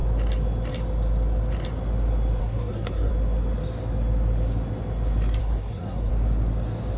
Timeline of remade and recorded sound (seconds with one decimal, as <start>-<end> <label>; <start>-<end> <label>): 0.0-2.4 recorded; 2.4-3.1 remade; 3.1-5.4 recorded; 5.4-6.1 remade; 6.1-7.0 recorded